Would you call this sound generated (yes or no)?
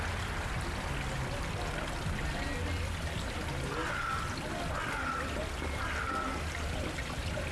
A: no